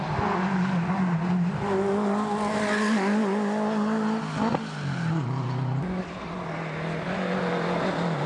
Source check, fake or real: real